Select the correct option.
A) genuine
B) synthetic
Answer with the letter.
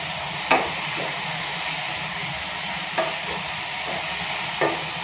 A